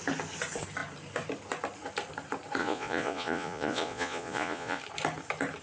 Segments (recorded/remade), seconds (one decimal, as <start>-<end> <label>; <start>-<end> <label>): 0.0-2.6 recorded; 2.6-4.8 remade; 4.8-5.6 recorded